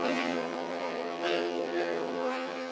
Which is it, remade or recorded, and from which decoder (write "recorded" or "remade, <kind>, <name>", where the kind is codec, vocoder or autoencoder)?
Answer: remade, vocoder, HiFi-GAN